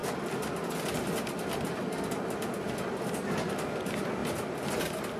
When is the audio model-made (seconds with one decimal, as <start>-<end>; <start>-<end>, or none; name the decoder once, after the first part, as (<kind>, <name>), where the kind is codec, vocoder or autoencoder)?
none

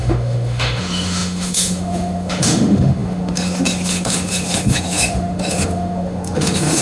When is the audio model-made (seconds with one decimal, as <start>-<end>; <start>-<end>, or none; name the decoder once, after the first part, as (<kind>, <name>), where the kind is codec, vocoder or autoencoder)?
0.0-6.8 (autoencoder, DAC-VAE)